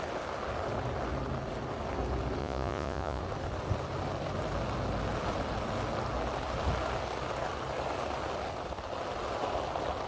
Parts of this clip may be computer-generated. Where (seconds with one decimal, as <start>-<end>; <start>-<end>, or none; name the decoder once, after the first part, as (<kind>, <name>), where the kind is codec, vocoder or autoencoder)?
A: 2.4-3.2 (vocoder, Vocos)